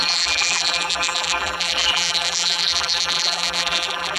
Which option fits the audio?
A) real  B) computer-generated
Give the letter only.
B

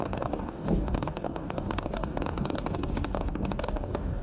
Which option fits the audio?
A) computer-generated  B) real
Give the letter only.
A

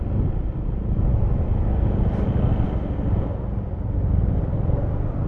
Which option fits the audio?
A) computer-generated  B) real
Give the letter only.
B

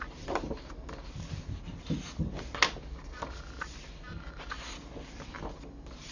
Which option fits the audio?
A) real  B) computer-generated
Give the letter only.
A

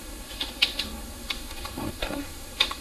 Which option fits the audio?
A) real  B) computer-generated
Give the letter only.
B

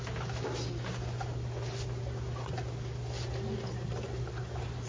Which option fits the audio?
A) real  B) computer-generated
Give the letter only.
A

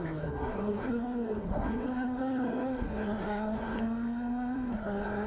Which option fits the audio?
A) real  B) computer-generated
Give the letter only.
B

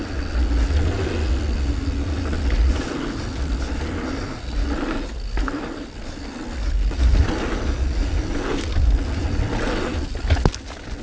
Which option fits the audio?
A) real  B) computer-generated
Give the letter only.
A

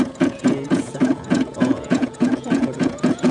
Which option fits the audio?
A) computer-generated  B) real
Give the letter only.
A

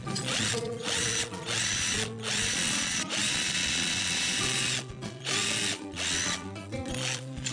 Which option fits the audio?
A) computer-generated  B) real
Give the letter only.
A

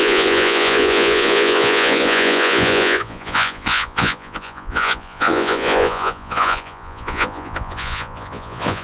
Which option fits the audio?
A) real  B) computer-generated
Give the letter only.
B